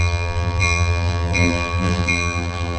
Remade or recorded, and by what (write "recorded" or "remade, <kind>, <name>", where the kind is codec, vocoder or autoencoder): remade, vocoder, BigVGAN v2